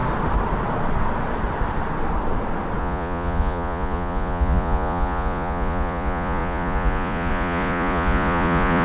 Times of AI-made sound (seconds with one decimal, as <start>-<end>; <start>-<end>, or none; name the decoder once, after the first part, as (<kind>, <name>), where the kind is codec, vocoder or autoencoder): 2.8-8.8 (vocoder, Vocos)